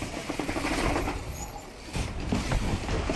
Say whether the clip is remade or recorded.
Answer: remade